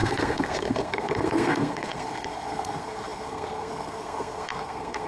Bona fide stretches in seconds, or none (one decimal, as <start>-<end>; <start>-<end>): none